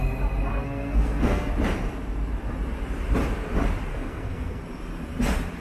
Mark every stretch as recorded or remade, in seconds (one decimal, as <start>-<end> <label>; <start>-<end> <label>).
0.0-0.5 recorded; 0.5-1.5 remade; 1.5-3.9 recorded; 3.9-4.6 remade; 4.6-5.6 recorded